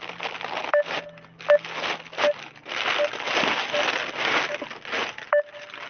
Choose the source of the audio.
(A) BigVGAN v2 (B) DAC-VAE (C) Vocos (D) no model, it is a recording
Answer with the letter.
D